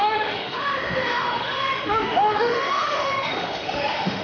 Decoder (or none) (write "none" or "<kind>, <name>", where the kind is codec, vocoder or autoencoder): autoencoder, DAC-VAE